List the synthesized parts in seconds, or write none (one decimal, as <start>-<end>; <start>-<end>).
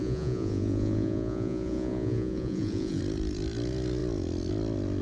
0.0-3.0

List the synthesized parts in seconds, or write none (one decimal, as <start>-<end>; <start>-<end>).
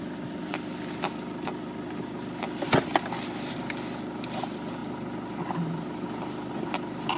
none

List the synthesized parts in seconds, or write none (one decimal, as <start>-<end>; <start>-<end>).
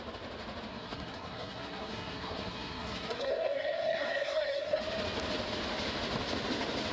0.7-4.8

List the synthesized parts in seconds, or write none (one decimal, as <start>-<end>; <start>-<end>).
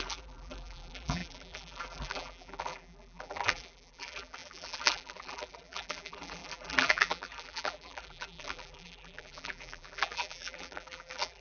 0.0-11.4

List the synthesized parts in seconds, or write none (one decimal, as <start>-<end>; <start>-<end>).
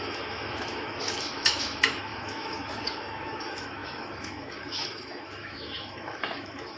0.0-6.8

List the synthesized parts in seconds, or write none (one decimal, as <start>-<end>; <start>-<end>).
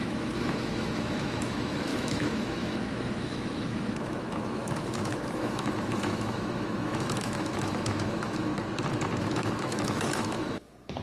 0.0-8.5; 9.2-11.0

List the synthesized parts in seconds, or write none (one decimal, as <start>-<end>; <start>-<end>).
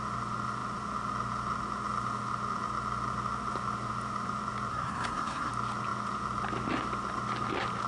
4.7-5.5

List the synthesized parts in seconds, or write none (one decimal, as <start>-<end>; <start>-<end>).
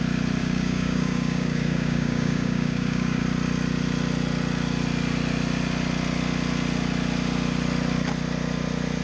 0.4-3.2